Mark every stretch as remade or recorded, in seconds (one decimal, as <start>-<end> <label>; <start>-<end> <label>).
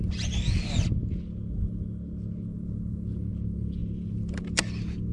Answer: 0.0-5.1 recorded